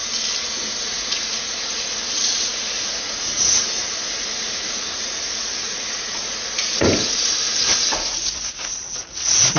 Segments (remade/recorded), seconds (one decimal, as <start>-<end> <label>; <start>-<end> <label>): 0.0-0.8 recorded; 0.8-9.6 remade